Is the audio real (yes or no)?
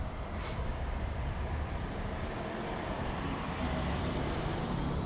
no